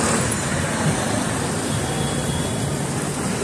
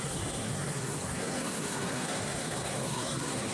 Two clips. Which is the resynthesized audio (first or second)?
second